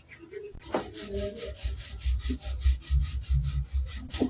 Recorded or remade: recorded